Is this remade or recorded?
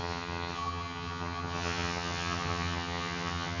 remade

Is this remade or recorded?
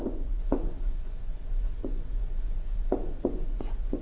remade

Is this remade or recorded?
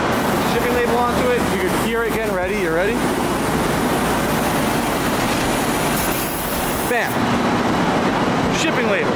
recorded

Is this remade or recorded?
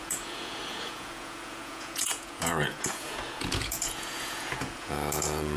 remade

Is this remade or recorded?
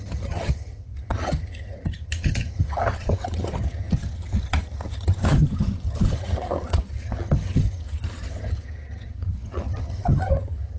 remade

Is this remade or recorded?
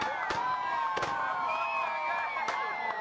recorded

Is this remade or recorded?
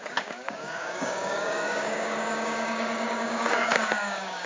remade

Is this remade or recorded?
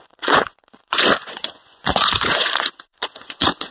remade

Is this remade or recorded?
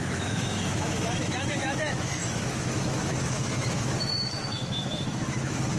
remade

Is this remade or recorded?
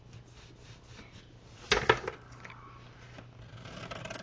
recorded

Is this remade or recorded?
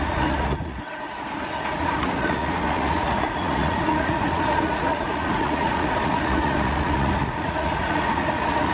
remade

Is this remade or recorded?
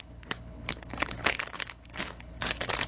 remade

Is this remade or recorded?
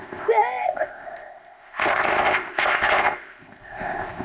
remade